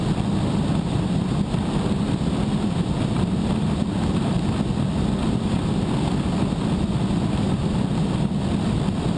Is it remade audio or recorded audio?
recorded